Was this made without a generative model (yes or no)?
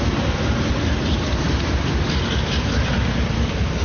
yes